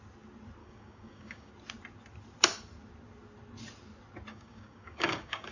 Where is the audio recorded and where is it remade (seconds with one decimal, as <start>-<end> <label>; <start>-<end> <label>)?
0.0-0.6 recorded; 0.6-1.5 remade; 1.5-4.3 recorded; 4.3-5.5 remade